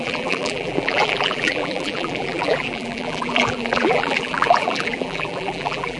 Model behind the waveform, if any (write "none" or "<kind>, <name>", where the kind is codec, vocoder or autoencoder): vocoder, BigVGAN v2